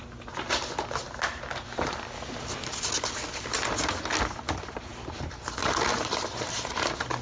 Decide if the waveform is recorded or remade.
recorded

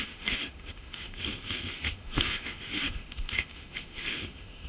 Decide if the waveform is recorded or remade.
remade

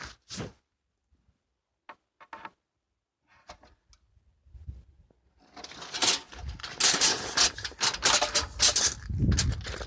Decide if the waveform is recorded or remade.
recorded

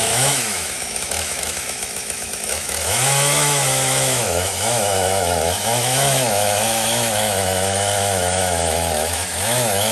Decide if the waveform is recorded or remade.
remade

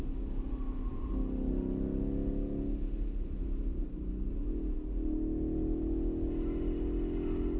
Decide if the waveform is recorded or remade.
recorded